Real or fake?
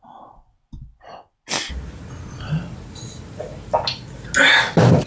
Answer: real